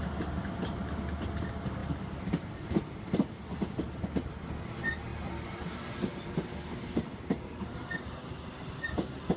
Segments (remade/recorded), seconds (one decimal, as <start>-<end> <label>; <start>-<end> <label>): 0.0-9.4 recorded